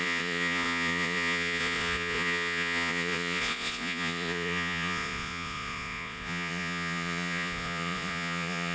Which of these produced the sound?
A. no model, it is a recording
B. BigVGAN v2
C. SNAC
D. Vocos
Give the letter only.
D